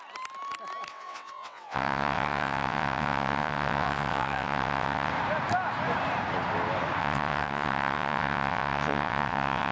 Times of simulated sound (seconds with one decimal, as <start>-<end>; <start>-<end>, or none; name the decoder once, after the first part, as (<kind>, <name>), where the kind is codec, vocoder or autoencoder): 0.9-5.1 (vocoder, WaveNeXt); 7.0-9.7